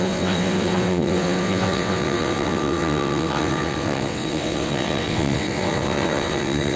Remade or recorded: remade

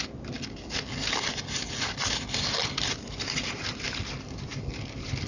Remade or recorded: recorded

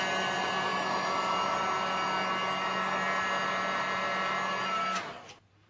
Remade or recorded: recorded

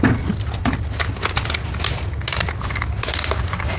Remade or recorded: recorded